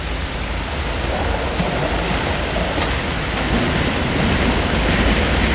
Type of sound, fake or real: real